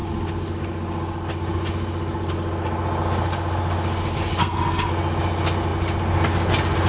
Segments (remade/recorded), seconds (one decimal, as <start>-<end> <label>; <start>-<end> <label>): 0.0-4.4 recorded; 4.4-4.9 remade; 4.9-6.9 recorded